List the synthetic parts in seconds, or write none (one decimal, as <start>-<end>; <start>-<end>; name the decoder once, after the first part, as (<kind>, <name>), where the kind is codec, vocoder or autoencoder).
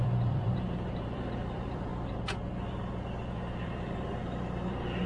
0.0-1.9 (vocoder, BigVGAN v2); 3.6-4.2